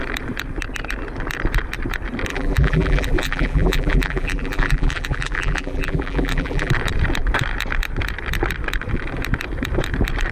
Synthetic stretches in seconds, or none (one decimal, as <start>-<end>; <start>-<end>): 2.3-6.7